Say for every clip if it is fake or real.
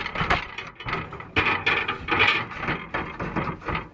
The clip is real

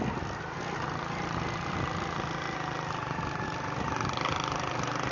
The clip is real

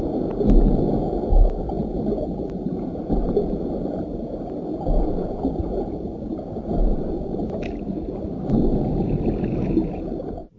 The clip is real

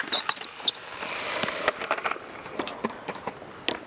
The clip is real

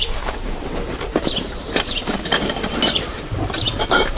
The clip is fake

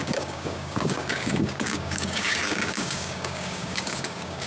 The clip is fake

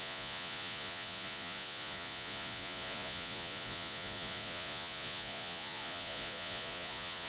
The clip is fake